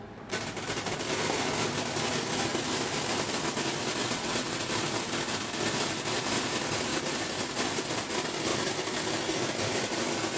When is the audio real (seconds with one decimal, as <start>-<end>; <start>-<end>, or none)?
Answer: 0.0-4.0; 4.6-10.4